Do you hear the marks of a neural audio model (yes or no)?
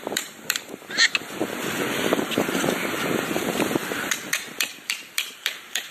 yes